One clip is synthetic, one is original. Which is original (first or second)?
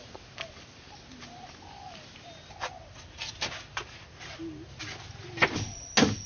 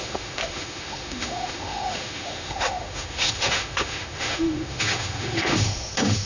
first